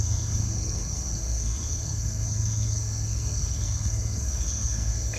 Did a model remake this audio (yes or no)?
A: yes